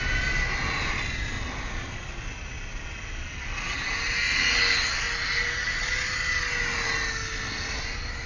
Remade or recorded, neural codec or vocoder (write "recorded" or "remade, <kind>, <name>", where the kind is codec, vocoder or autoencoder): recorded